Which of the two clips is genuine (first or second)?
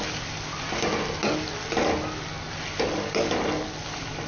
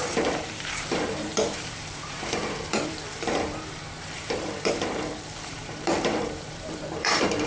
first